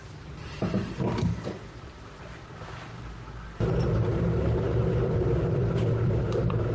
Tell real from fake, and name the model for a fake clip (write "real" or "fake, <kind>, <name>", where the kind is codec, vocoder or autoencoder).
fake, vocoder, BigVGAN v2